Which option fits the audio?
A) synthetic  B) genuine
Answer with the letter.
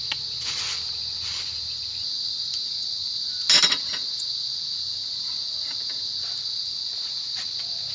B